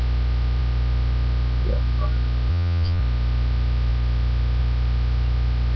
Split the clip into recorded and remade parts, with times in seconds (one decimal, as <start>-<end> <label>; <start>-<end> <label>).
0.0-2.5 recorded; 2.5-3.0 remade; 3.0-5.8 recorded